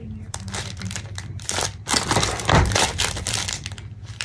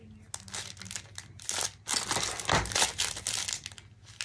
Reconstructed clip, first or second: first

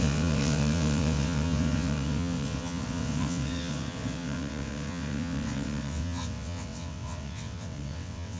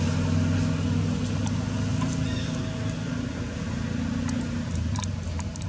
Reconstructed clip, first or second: first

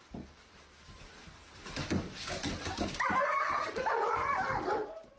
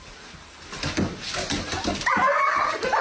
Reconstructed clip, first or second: first